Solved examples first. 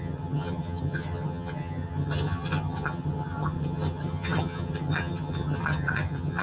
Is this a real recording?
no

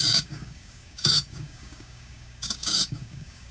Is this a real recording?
no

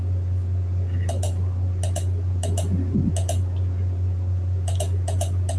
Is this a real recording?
yes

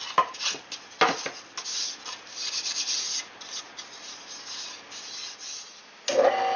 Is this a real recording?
yes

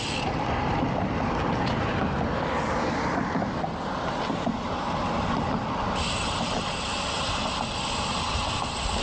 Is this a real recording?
yes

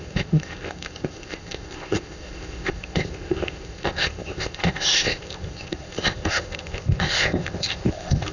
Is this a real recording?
no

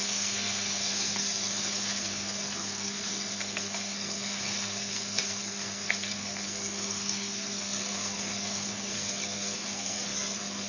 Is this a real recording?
no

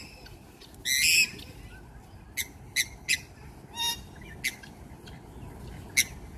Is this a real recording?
yes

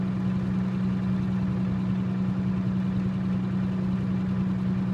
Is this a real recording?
yes